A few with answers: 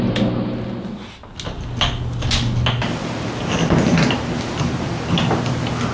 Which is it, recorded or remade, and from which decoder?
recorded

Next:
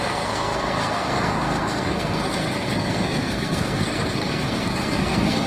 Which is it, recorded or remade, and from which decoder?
remade, codec, SNAC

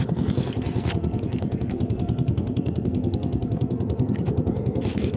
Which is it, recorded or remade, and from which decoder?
remade, codec, SNAC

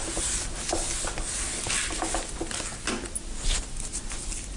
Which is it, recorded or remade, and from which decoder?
recorded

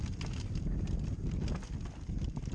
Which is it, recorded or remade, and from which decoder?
recorded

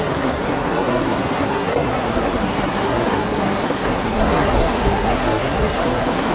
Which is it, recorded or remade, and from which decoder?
remade, codec, SNAC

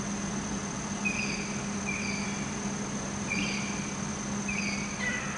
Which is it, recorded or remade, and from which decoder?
recorded